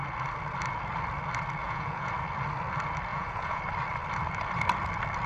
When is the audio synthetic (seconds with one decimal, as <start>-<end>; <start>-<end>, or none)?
1.6-2.1; 3.1-3.6